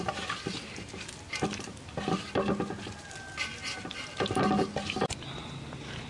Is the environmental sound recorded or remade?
recorded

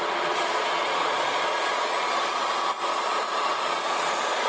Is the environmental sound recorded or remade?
remade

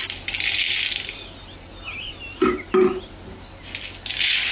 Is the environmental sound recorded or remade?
recorded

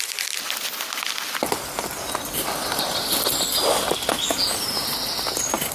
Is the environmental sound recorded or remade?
recorded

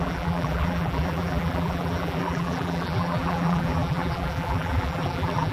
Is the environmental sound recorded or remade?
remade